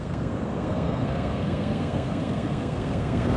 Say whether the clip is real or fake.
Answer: fake